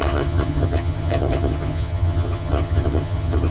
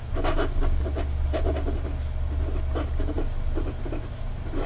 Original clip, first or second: second